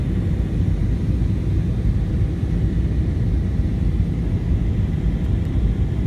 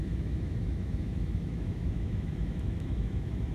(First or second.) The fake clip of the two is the second